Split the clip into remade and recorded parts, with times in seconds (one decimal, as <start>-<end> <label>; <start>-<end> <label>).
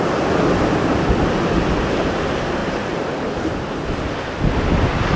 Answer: 0.0-2.6 recorded; 2.6-4.1 remade; 4.1-5.2 recorded